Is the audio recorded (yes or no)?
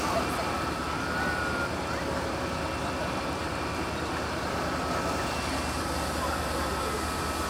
no